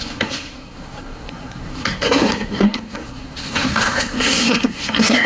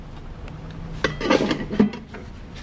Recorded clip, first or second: second